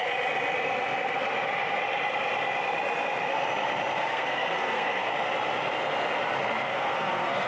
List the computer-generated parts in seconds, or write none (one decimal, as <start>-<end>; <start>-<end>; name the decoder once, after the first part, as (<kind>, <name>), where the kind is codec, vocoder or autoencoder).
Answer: 4.0-5.1 (codec, SNAC); 6.7-7.5